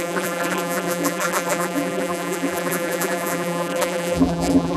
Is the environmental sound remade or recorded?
remade